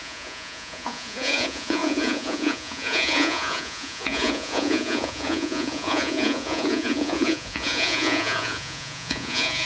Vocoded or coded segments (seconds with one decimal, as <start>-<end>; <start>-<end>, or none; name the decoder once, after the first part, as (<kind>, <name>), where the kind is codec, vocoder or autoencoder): 0.0-9.7 (vocoder, Vocos)